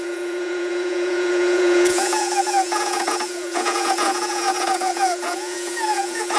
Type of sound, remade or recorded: remade